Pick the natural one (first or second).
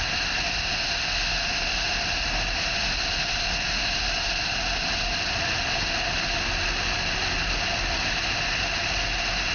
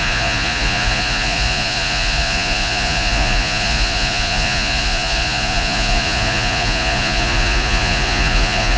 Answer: first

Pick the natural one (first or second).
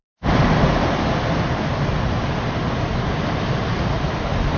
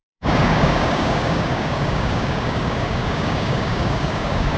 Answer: first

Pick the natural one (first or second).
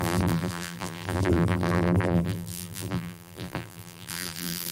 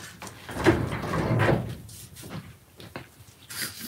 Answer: second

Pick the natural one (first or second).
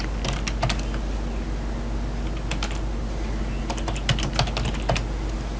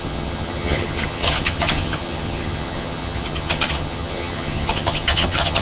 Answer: first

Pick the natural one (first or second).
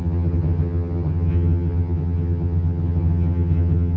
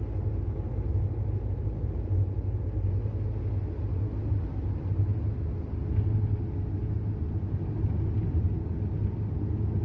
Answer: second